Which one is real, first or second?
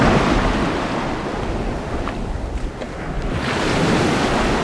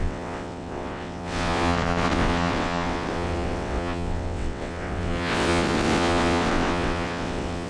first